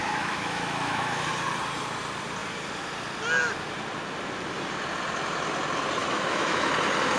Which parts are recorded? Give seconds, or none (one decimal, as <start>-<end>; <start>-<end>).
1.3-6.0; 6.7-7.2